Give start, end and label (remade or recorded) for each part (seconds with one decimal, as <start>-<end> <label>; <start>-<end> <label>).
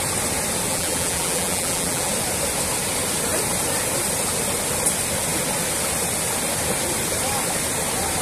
0.0-0.7 recorded; 0.7-2.1 remade; 2.1-8.2 recorded